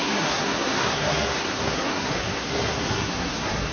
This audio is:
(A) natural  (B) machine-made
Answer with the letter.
B